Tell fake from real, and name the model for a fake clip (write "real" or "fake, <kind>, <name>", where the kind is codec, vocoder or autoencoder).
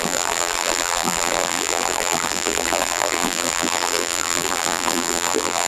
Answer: fake, vocoder, BigVGAN v2